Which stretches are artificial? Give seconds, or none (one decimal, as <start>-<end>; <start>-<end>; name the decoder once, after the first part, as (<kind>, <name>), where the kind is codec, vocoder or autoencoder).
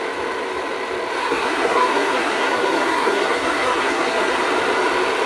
1.2-4.4 (codec, SNAC)